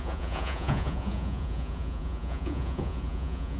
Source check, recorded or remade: remade